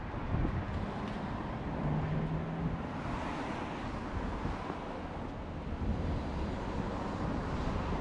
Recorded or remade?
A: recorded